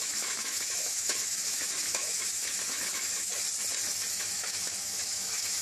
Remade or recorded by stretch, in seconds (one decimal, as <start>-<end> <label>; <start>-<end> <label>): 0.0-3.3 remade; 3.3-4.1 recorded; 4.1-5.6 remade